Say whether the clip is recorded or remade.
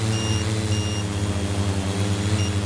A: recorded